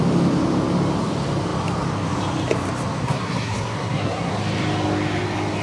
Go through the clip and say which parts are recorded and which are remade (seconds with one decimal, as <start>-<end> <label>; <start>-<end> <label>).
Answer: 0.0-3.0 recorded; 3.0-4.3 remade; 4.3-5.6 recorded